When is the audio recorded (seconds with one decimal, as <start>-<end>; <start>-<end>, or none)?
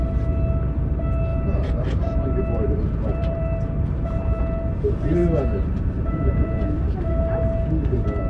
0.0-1.3; 4.4-5.2; 6.6-8.3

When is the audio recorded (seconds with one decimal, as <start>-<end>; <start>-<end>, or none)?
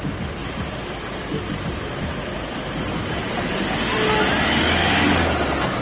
0.0-0.4; 3.3-5.8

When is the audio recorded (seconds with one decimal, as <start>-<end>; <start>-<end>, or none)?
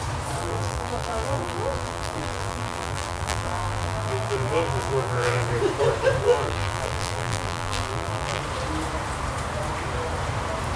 0.0-0.4; 5.5-6.2; 8.4-10.8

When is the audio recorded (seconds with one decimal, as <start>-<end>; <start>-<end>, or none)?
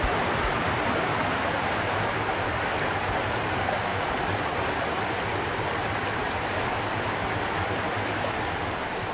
3.9-6.0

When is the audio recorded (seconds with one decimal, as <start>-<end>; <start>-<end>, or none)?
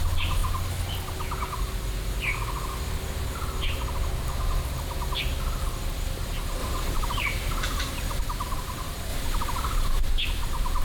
0.0-6.6; 8.2-9.1; 10.0-10.8